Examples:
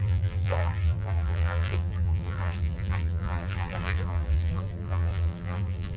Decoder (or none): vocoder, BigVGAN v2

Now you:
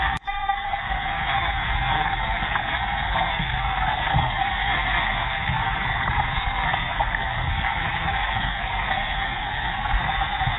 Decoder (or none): codec, SNAC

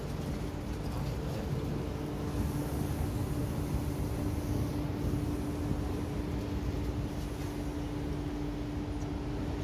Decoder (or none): none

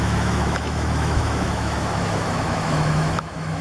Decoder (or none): autoencoder, DAC-VAE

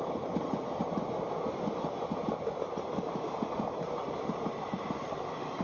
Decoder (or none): none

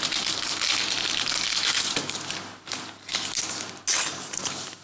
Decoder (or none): none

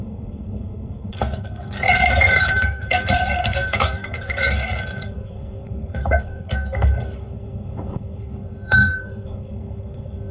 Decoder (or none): codec, SNAC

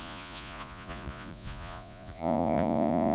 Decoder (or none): vocoder, Vocos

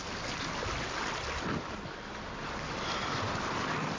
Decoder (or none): none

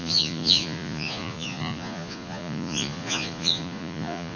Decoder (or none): vocoder, Vocos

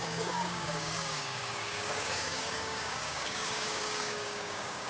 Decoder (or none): codec, DAC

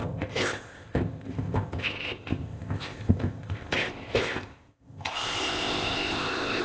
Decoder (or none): codec, ZipCodec